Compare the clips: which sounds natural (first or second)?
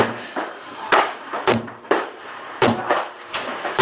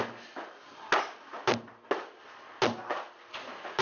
second